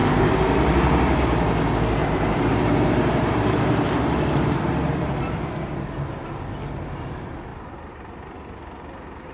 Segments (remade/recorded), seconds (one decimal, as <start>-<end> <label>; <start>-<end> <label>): 0.0-2.0 recorded; 2.0-5.1 remade; 5.1-9.3 recorded